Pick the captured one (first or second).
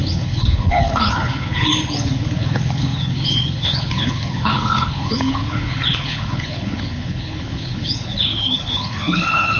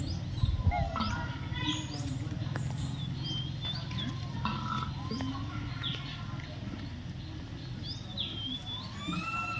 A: second